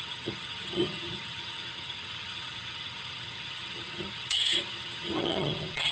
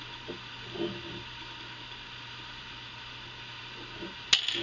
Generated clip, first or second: first